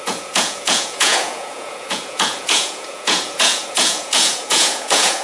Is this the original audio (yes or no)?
no